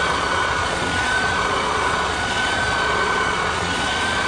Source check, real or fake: fake